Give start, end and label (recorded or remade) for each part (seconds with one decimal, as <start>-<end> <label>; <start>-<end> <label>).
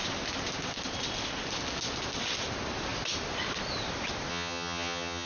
0.0-4.3 recorded; 4.3-5.3 remade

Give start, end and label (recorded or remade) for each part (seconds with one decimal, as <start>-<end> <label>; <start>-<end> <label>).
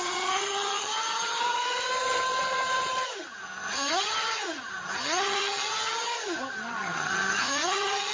0.0-8.1 remade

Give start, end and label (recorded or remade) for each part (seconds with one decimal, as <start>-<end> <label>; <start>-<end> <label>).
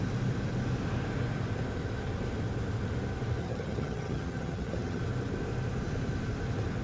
0.0-3.4 recorded; 3.4-5.0 remade; 5.0-6.8 recorded